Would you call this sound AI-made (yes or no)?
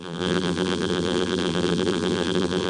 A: yes